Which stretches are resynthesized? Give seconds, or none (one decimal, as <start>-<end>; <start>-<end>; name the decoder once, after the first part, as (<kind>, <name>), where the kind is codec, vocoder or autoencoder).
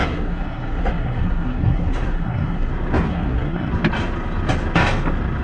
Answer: 0.0-2.7 (codec, SNAC); 3.1-3.7